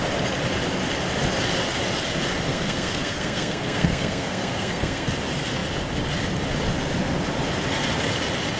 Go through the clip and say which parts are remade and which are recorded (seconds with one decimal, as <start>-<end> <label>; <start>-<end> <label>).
0.0-2.5 recorded; 2.5-5.1 remade; 5.1-8.6 recorded